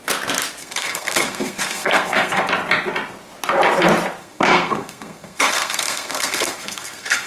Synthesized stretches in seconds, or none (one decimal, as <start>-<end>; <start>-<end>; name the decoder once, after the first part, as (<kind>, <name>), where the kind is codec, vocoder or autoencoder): 0.6-2.5 (codec, SNAC); 4.2-7.3